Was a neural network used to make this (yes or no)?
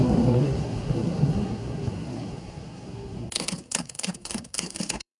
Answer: yes